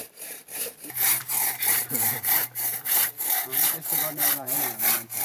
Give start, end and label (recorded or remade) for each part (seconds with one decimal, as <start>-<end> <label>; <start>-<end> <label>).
0.0-3.5 remade; 3.5-4.3 recorded; 4.3-5.2 remade